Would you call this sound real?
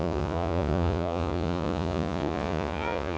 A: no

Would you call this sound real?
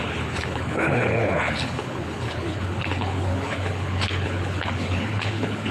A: no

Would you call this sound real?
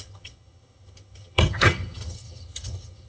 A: no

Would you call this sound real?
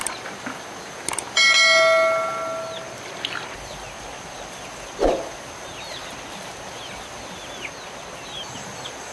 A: yes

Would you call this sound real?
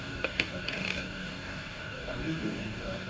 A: no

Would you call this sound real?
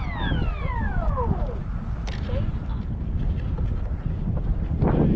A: yes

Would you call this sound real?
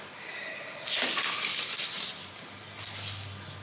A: yes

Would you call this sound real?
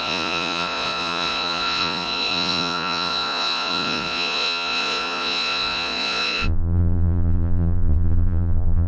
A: no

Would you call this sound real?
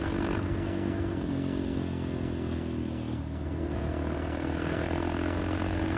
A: no